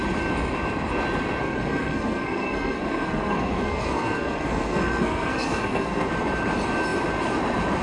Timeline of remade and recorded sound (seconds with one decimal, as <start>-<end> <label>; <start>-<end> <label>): 0.0-1.4 recorded; 1.4-6.1 remade; 6.1-7.8 recorded